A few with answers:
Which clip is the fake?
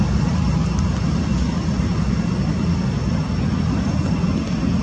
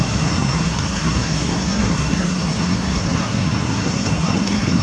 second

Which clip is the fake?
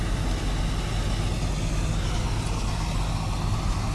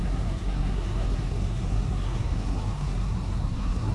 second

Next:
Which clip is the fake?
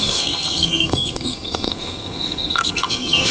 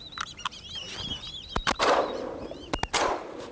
first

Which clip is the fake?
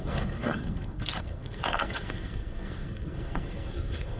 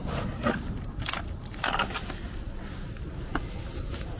first